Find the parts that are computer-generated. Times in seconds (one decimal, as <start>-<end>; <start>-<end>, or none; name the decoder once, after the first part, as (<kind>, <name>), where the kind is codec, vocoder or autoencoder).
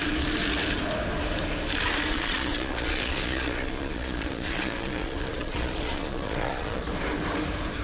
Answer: 2.1-6.8 (vocoder, Vocos)